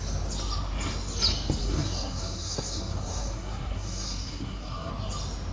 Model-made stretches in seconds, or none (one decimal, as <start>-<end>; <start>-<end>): 1.6-4.9